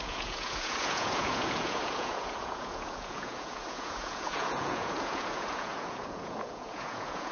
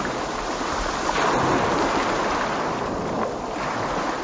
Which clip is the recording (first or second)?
second